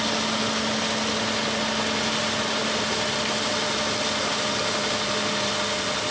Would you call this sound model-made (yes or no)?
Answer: no